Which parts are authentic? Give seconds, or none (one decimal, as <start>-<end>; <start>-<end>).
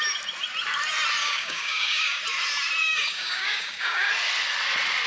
0.0-1.2; 2.2-2.8; 4.1-5.1